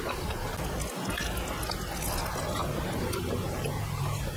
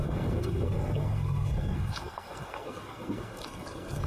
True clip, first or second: first